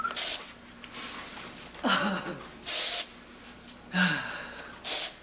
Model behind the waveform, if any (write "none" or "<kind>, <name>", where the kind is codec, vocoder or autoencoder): none